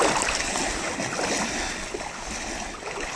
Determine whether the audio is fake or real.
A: real